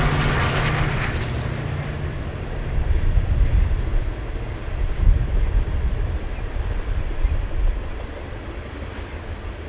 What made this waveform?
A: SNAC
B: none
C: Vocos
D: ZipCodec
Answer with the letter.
B